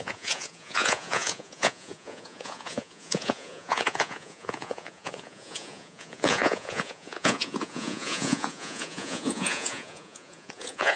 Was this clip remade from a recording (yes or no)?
yes